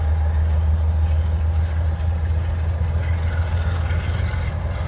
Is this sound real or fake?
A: real